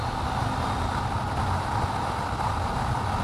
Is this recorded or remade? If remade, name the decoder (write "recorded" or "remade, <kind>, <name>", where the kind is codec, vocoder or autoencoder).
recorded